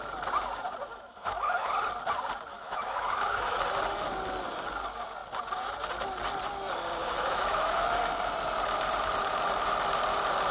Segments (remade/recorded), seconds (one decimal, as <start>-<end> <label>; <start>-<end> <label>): 0.0-0.9 recorded; 0.9-1.7 remade; 1.7-2.5 recorded; 2.5-3.6 remade; 3.6-7.0 recorded; 7.0-7.9 remade; 7.9-10.5 recorded